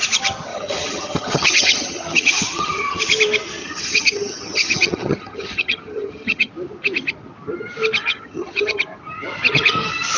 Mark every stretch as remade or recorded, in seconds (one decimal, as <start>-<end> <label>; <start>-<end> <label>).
0.0-0.5 recorded; 0.5-3.0 remade; 3.0-3.6 recorded; 3.6-6.5 remade; 6.5-8.0 recorded; 8.0-8.8 remade; 8.8-10.2 recorded